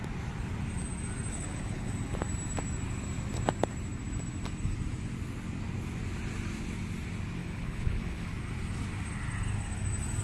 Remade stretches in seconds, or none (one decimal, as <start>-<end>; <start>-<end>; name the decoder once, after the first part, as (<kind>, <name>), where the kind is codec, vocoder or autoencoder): 1.3-1.9 (codec, HILCodec); 7.4-8.3